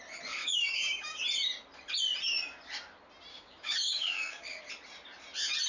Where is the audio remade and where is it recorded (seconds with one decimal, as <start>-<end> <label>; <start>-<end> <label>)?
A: 0.0-0.4 recorded; 0.4-1.2 remade; 1.2-3.3 recorded; 3.3-4.6 remade; 4.6-5.7 recorded